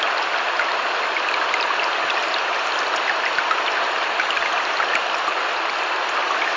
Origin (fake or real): real